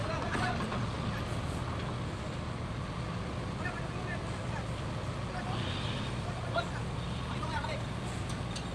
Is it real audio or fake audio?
real